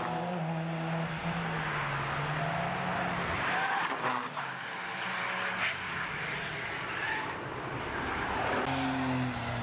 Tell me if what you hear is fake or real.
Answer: real